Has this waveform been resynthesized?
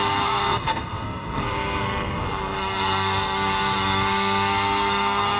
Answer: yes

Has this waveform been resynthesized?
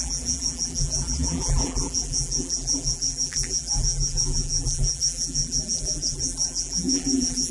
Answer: yes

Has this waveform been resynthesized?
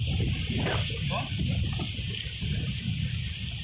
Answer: no